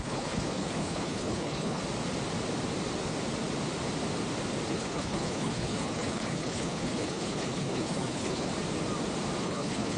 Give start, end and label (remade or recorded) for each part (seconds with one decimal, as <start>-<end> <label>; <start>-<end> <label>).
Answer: 0.0-1.8 remade; 1.8-4.7 recorded; 4.7-8.5 remade; 8.5-9.4 recorded; 9.4-10.0 remade